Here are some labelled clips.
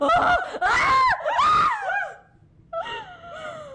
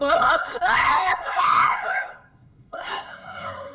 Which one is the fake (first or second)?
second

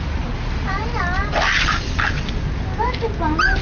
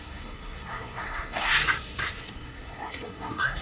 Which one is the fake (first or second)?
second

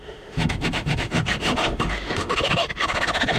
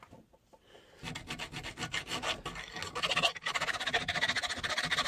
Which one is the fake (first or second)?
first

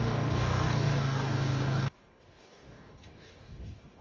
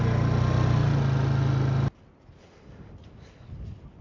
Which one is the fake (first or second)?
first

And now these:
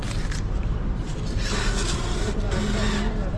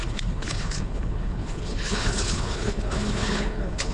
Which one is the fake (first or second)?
second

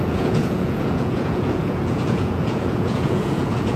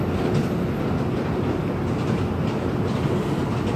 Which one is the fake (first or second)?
first